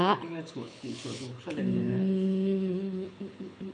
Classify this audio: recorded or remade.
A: remade